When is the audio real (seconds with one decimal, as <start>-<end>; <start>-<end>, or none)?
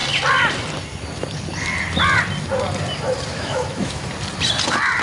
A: 0.0-3.3; 4.1-5.0